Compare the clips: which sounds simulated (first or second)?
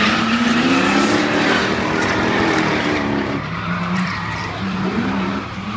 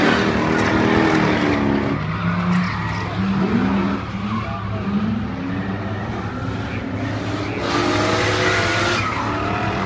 first